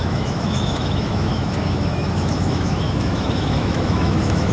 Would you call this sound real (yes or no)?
no